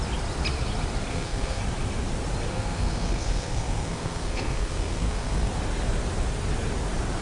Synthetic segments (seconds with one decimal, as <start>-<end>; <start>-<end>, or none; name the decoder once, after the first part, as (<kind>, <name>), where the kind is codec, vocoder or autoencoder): 1.1-1.6 (codec, SNAC); 2.5-5.5